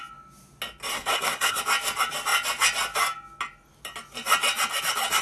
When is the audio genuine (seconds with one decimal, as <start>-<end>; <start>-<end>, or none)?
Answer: 0.0-0.9; 1.6-5.2